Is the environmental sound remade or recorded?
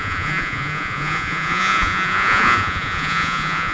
remade